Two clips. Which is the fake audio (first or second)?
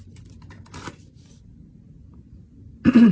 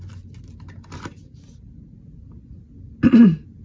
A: first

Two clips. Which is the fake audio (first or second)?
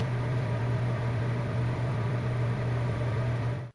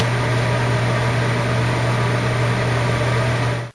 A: first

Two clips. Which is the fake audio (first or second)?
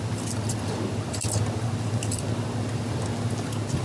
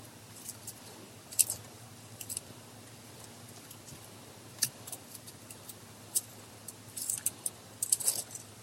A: second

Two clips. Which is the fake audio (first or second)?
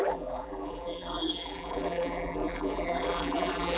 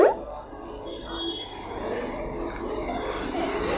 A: first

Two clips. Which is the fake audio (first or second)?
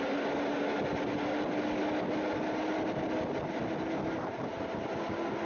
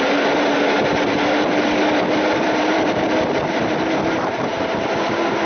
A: second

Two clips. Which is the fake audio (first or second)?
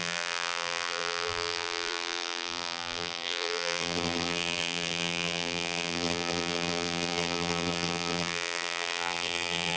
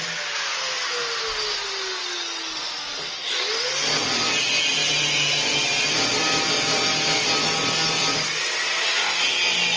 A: first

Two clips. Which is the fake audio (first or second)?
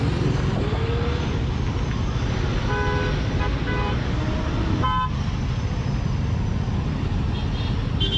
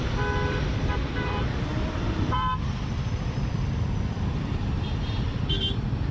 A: second